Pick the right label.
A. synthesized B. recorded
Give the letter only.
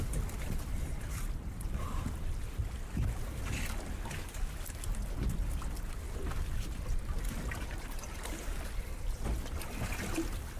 B